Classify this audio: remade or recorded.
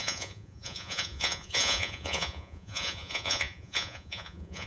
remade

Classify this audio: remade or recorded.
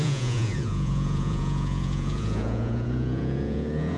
remade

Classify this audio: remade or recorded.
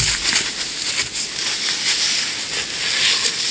recorded